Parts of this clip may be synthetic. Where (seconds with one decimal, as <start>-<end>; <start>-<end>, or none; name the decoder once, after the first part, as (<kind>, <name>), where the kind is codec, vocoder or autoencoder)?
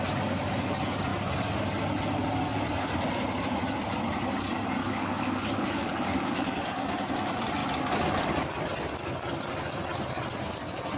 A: 4.8-7.1 (codec, DAC)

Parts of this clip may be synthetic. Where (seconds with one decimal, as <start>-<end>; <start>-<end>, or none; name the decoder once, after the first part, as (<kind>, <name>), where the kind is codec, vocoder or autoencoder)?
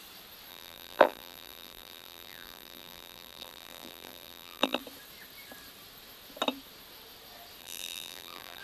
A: 0.5-4.8 (vocoder, BigVGAN v2); 7.6-8.6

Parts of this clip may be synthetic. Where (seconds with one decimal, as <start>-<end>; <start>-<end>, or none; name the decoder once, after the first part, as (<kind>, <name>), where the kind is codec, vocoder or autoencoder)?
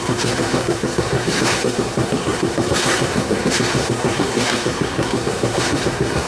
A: 0.0-6.3 (codec, SNAC)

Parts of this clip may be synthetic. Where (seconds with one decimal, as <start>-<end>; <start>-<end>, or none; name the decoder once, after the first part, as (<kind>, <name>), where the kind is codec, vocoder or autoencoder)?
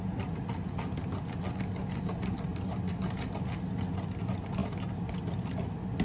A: 2.5-3.1 (vocoder, BigVGAN v2); 4.6-5.1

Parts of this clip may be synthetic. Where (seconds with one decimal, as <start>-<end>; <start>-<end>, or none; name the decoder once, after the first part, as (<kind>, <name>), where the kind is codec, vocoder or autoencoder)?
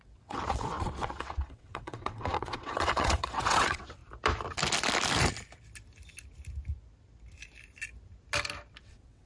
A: 0.0-4.0 (vocoder, WaveNeXt); 8.8-9.3